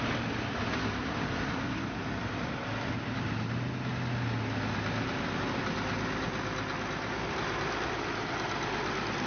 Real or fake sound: real